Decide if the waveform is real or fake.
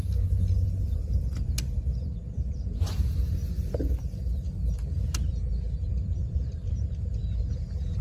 real